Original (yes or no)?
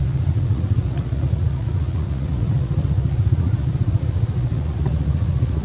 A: no